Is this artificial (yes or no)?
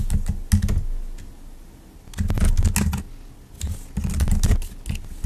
no